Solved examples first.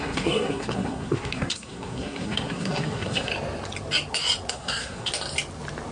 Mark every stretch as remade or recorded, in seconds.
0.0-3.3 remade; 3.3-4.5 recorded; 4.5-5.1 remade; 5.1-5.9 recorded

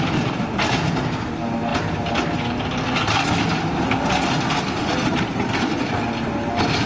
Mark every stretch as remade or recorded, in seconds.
0.0-6.9 recorded

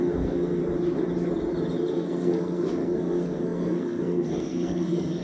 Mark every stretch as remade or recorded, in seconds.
0.0-0.6 remade; 0.6-1.9 recorded; 1.9-5.2 remade

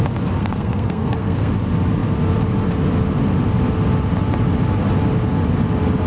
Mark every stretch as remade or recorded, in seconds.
0.0-0.4 recorded; 0.4-1.5 remade; 1.5-6.1 recorded